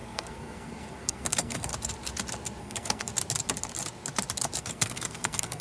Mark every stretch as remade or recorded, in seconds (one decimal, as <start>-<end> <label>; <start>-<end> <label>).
0.0-1.7 remade; 1.7-2.6 recorded; 2.6-3.1 remade; 3.1-4.6 recorded; 4.6-5.6 remade